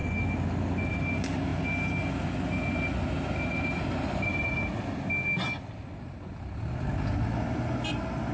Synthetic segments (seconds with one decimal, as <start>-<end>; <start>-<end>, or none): none